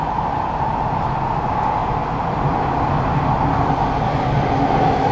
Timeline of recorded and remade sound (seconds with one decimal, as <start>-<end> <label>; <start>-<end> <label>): 0.0-5.1 recorded